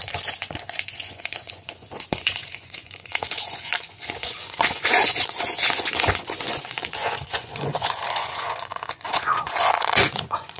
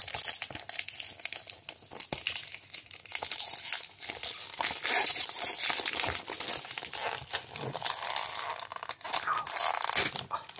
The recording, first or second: second